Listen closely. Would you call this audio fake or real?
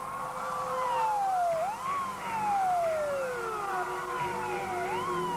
real